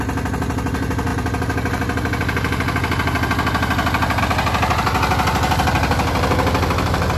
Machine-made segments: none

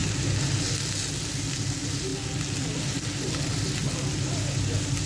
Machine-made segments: none

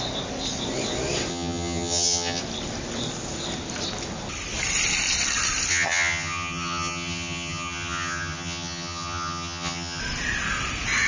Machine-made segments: 1.3-2.4; 5.7-10.0

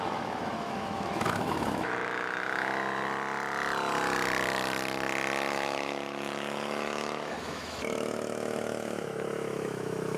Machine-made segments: 0.0-2.7; 5.5-10.2

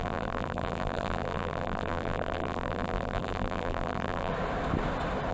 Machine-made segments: 0.0-4.3

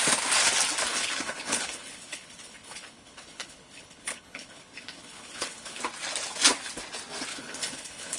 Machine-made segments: 0.9-5.8; 7.3-8.2

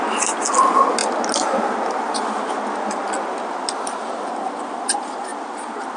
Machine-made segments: none